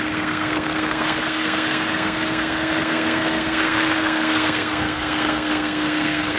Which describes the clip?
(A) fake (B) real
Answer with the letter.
A